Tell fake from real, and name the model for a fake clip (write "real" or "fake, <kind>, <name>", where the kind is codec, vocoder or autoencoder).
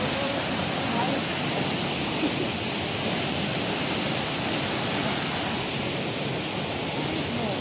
real